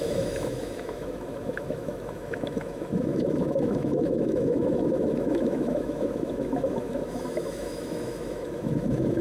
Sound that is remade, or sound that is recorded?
remade